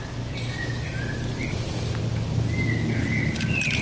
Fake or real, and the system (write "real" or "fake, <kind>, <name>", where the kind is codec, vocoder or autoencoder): real